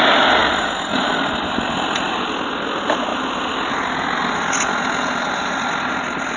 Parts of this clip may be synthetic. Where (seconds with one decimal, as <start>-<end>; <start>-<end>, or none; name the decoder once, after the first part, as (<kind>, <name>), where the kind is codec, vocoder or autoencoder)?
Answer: none